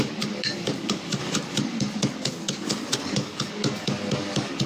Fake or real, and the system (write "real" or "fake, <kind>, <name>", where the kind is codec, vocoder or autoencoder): fake, codec, DAC